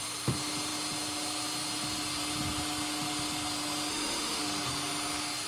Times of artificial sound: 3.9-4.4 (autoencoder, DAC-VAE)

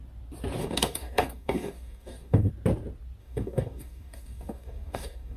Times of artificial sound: 0.6-2.5 (codec, DAC); 3.2-5.4

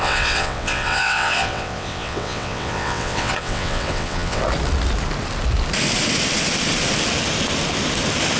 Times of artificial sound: 0.0-4.4 (vocoder, WaveNeXt)

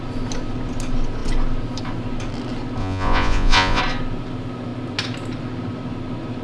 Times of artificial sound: 2.8-3.8 (vocoder, Vocos)